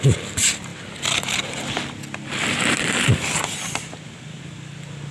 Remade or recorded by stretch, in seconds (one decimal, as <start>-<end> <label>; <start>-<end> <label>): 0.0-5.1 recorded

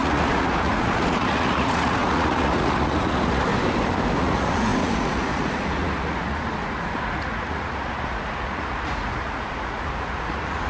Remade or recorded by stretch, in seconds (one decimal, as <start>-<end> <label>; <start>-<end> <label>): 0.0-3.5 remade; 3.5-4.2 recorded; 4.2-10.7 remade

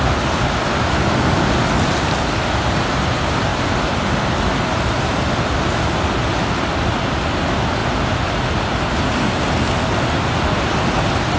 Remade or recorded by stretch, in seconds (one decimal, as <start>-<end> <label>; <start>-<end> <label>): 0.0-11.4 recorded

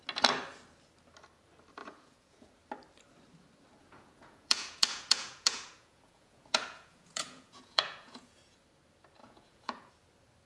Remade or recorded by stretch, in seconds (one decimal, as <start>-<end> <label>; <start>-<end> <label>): 0.0-1.8 recorded; 1.8-2.5 remade; 2.5-3.8 recorded; 3.8-8.6 remade; 8.6-9.2 recorded; 9.2-9.9 remade; 9.9-10.5 recorded

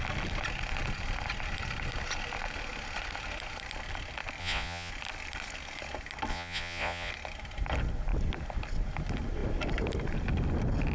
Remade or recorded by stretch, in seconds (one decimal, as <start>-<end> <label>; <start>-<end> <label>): 0.0-4.4 recorded; 4.4-4.9 remade; 4.9-6.3 recorded; 6.3-7.1 remade; 7.1-10.9 recorded

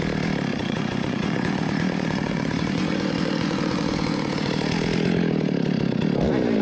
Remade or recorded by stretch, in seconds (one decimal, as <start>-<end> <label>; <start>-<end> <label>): 0.0-0.5 recorded; 0.5-4.5 remade; 4.5-6.6 recorded

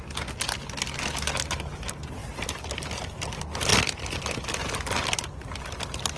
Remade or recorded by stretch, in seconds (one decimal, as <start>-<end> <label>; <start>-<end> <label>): 0.0-6.2 recorded

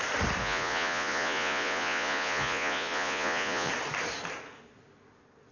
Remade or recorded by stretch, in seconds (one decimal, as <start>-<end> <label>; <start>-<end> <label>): 0.0-0.4 recorded; 0.4-3.7 remade; 3.7-5.5 recorded